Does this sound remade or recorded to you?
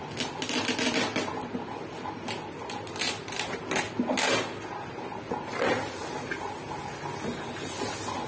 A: recorded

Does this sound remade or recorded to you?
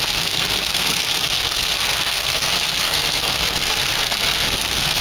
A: remade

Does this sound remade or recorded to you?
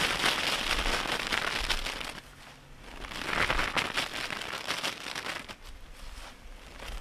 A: recorded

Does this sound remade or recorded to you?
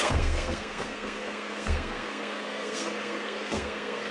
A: remade